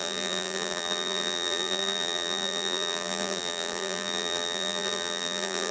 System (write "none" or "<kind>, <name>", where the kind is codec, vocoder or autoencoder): vocoder, BigVGAN v2